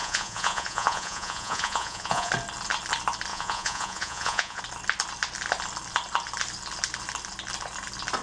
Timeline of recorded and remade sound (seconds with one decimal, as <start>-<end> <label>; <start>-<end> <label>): 0.0-2.3 remade; 2.3-3.3 recorded; 3.3-4.6 remade; 4.6-8.2 recorded